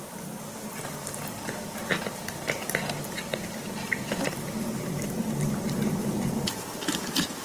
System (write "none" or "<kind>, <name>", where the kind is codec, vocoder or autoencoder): none